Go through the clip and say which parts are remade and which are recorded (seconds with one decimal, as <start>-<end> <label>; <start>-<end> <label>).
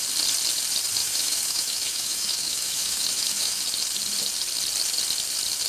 0.0-1.0 recorded; 1.0-3.6 remade; 3.6-5.7 recorded